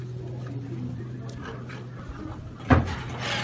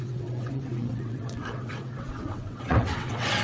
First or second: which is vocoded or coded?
second